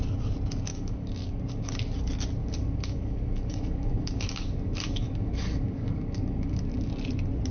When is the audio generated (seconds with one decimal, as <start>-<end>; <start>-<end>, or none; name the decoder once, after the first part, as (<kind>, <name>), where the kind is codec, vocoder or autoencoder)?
0.7-1.7 (codec, DAC); 2.4-6.9